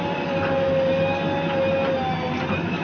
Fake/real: real